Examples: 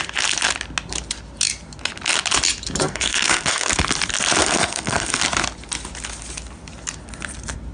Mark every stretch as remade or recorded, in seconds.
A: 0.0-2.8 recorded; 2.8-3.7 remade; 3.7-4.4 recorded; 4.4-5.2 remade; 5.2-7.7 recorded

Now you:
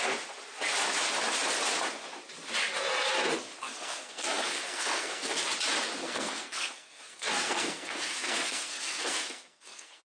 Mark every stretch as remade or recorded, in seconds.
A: 0.0-3.6 recorded; 3.6-5.4 remade; 5.4-6.0 recorded; 6.0-10.0 remade

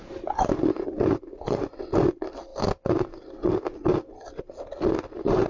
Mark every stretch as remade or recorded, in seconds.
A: 0.0-2.0 recorded; 2.0-2.5 remade; 2.5-4.4 recorded; 4.4-5.5 remade